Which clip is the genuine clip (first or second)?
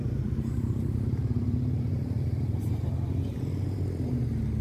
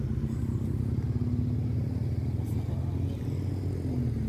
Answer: second